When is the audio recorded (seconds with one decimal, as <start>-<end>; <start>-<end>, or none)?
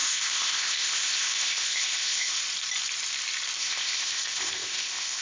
2.4-3.6